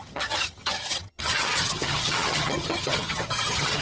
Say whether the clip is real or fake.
fake